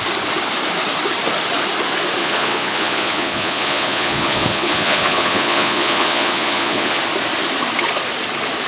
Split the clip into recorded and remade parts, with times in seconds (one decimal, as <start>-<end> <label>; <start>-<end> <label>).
0.0-2.2 recorded; 2.2-7.0 remade; 7.0-8.7 recorded